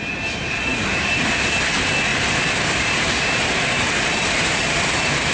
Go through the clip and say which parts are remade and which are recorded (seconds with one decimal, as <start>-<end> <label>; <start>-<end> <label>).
0.0-0.7 recorded; 0.7-1.3 remade; 1.3-2.1 recorded; 2.1-5.3 remade